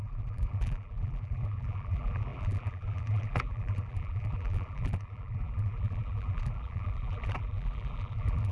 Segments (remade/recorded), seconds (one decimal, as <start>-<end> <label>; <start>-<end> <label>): 0.0-8.5 remade